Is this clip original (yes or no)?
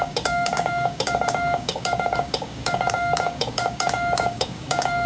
no